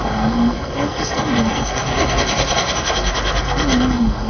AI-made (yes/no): yes